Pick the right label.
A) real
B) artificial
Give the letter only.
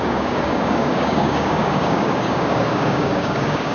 B